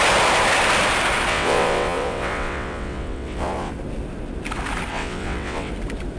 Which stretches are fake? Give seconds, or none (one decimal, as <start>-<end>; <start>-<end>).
1.3-3.7; 4.9-5.7